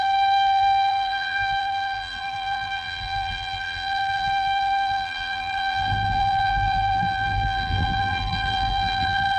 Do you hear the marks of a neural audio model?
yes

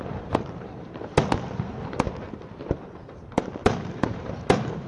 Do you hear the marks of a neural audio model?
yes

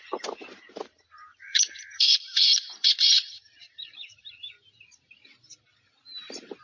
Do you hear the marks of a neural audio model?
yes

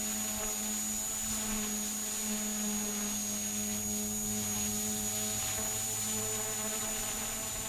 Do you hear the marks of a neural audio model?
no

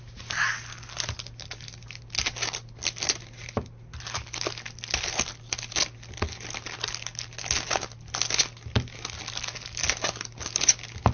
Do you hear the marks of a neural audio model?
no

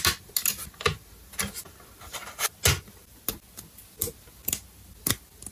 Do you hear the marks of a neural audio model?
no